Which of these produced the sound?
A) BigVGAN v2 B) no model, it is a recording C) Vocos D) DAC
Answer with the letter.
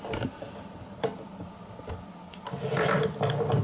B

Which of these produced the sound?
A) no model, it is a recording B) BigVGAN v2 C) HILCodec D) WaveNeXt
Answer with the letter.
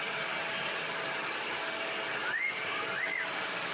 A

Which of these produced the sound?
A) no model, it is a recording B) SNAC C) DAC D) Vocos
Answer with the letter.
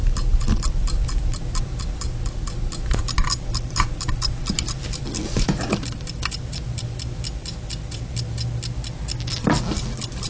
A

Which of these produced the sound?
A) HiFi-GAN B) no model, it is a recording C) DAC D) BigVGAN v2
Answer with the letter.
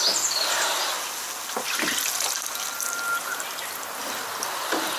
B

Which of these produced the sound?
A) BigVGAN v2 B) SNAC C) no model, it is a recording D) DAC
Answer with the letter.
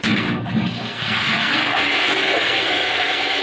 B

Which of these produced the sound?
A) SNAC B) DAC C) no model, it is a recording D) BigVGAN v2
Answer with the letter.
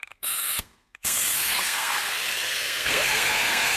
A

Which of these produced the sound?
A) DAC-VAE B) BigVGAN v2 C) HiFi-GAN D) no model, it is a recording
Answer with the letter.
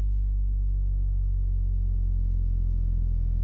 D